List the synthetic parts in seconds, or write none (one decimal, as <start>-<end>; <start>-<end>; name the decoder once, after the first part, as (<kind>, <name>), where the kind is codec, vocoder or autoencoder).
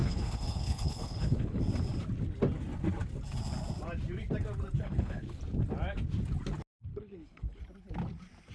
0.0-1.6 (codec, HILCodec); 4.8-5.4; 6.9-7.6